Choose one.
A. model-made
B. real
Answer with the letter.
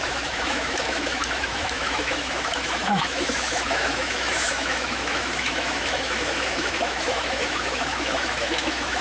A